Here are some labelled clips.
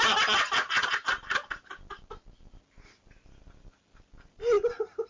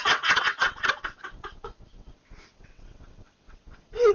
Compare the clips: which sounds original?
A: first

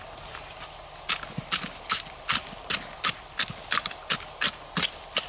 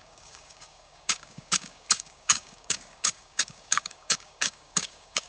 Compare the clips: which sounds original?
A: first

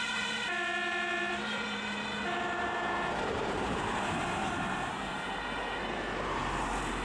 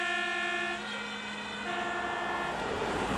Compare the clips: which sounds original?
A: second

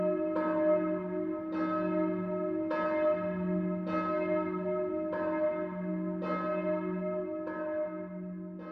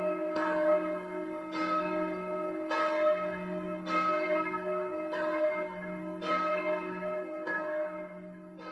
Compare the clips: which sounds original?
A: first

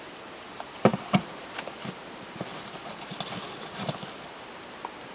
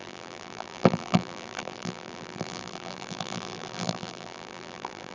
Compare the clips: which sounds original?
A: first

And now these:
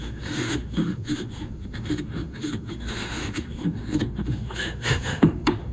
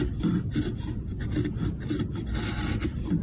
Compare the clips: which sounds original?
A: second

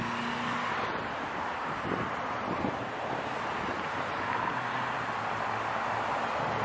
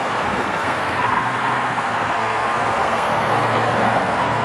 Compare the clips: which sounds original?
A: first